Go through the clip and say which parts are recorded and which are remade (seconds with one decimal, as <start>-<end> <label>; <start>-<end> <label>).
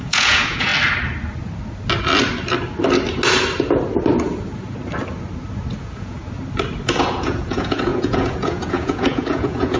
0.0-0.7 remade; 0.7-5.8 recorded; 5.8-6.2 remade; 6.2-7.0 recorded; 7.0-9.8 remade